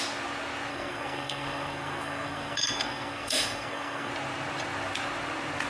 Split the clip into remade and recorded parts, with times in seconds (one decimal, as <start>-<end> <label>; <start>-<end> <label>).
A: 0.0-0.7 recorded; 0.7-4.1 remade; 4.1-5.7 recorded